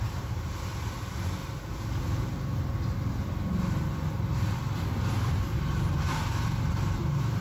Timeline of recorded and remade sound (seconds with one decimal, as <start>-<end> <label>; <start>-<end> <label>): 0.0-1.4 remade; 1.4-5.3 recorded; 5.3-7.4 remade